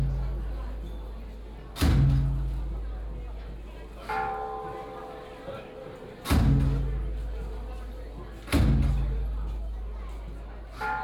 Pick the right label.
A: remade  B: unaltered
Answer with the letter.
B